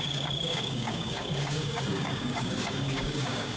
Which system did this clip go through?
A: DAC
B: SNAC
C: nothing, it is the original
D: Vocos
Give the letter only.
A